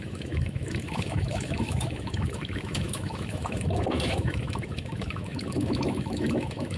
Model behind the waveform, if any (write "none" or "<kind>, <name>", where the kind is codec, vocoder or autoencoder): autoencoder, DAC-VAE